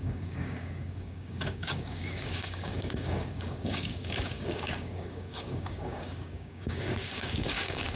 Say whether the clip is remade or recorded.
remade